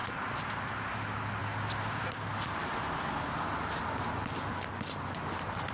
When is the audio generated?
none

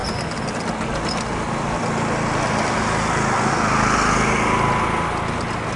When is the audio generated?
none

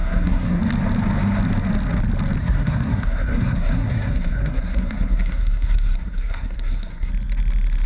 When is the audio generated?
0.0-0.6 (codec, SNAC); 2.4-7.1

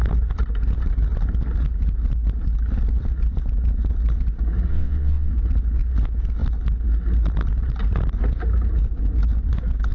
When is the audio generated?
4.7-5.3 (vocoder, WaveNeXt)